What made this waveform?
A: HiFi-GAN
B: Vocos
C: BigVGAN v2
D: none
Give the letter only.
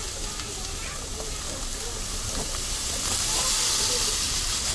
D